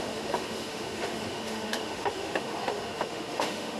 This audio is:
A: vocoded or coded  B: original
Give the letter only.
A